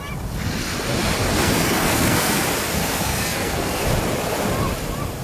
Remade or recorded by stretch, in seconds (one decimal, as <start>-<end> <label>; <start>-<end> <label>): 0.0-1.3 recorded; 1.3-2.4 remade; 2.4-2.8 recorded; 2.8-3.8 remade; 3.8-5.2 recorded